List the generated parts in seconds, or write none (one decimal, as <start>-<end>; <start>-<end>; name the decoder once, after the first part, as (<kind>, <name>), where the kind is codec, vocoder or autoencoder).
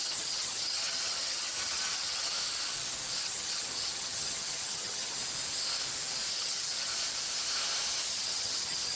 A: 0.0-2.3 (vocoder, HiFi-GAN); 3.2-5.2; 6.3-6.9; 8.1-9.0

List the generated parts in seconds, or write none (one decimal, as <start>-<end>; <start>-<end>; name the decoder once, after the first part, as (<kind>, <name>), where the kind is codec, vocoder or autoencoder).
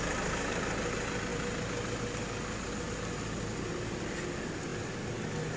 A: none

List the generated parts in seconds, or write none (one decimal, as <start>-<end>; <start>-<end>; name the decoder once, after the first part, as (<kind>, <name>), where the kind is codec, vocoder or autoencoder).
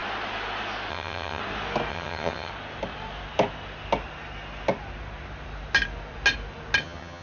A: 0.9-1.4 (vocoder, HiFi-GAN); 1.9-2.5; 6.8-7.2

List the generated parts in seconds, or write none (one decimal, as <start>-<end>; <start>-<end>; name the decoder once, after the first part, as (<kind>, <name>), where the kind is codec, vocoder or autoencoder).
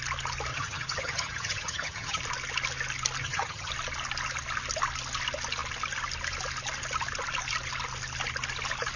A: 0.5-2.2 (vocoder, HiFi-GAN); 3.2-3.7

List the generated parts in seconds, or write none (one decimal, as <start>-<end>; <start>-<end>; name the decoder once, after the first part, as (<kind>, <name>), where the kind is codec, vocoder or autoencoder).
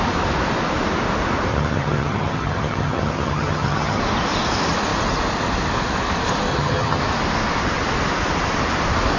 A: 1.5-4.0 (vocoder, HiFi-GAN); 6.5-7.0